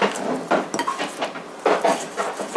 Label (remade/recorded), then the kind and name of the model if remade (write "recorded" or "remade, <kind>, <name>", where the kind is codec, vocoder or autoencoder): recorded